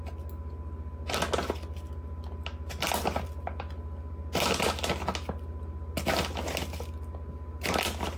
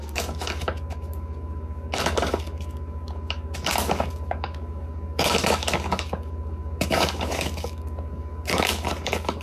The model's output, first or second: second